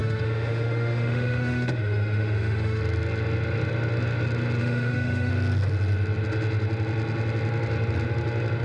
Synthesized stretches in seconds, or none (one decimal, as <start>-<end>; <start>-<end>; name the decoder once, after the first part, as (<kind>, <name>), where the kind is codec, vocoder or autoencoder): 0.0-2.8 (autoencoder, DAC-VAE); 4.6-5.3